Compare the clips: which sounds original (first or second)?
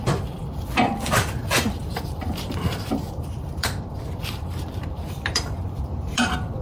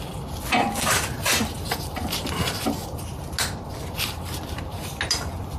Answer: second